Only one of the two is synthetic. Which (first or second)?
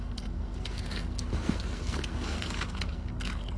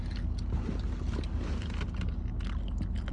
first